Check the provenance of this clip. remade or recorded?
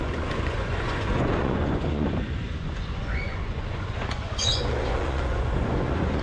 remade